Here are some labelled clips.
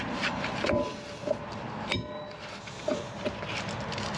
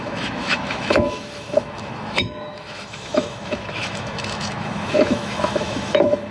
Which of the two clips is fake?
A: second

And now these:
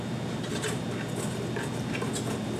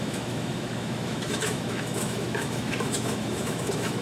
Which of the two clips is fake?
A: second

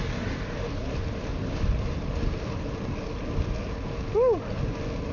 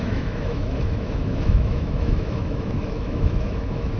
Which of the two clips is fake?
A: second